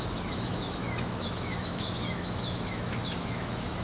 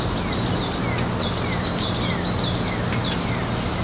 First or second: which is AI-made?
first